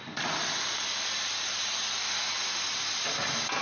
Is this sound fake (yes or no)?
no